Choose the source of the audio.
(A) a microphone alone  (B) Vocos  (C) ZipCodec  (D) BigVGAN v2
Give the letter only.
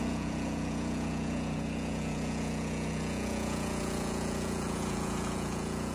B